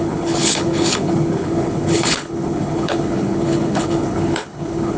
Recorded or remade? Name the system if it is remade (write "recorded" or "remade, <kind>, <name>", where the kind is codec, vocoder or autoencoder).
remade, codec, HILCodec